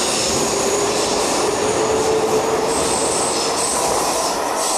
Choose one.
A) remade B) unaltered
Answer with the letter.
B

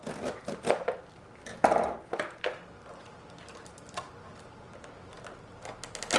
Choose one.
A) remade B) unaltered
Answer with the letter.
B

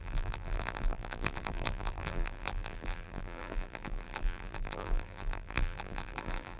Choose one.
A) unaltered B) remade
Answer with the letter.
B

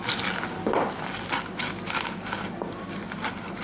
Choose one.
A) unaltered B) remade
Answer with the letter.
A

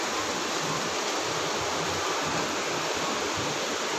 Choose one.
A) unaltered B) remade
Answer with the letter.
B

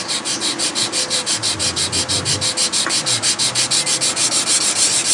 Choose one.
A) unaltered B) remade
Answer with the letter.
A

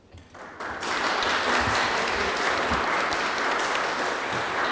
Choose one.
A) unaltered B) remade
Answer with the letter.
A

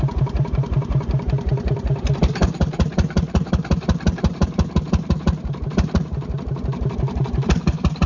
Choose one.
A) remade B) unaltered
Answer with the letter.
A